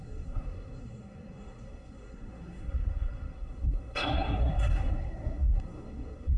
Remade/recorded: remade